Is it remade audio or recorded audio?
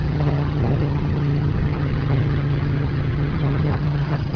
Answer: remade